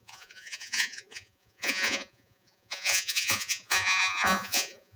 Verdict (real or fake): fake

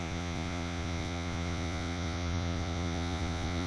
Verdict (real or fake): fake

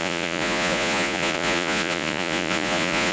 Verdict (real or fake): fake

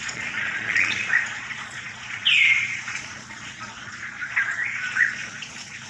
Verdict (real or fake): fake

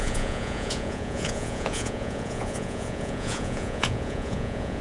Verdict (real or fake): fake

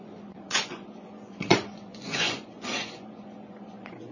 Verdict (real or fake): fake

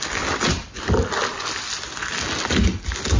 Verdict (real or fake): real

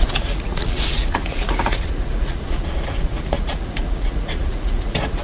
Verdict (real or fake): fake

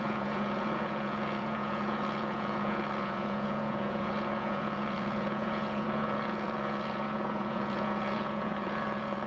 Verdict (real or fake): fake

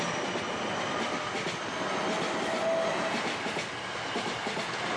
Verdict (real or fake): real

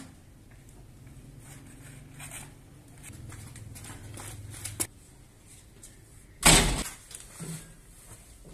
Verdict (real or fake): real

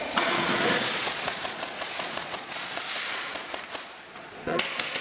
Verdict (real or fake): fake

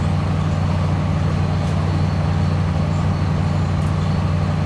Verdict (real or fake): real